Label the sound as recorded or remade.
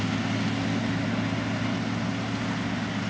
recorded